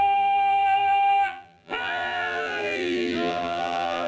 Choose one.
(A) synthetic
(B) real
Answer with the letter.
A